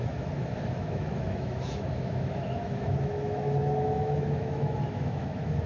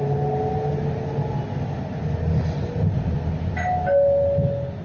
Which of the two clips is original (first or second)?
second